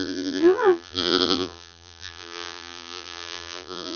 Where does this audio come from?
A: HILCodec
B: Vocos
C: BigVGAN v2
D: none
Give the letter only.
C